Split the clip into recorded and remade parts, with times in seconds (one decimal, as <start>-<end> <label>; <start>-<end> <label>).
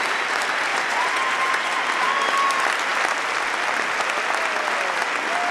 0.0-0.7 recorded; 0.7-1.7 remade; 1.7-5.5 recorded